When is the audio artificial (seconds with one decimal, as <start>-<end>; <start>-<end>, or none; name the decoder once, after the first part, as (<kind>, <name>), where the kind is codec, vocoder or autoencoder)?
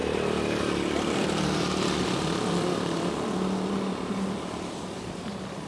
0.0-5.7 (vocoder, BigVGAN v2)